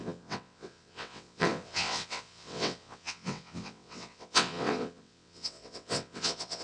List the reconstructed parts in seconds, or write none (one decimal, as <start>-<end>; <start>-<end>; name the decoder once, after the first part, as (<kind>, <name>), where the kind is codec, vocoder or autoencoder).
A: 0.0-6.6 (vocoder, WaveNeXt)